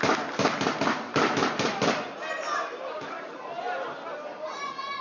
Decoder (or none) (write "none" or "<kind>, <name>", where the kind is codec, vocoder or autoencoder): none